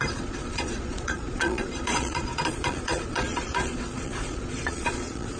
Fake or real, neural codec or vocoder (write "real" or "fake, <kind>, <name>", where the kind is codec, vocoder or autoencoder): fake, vocoder, Vocos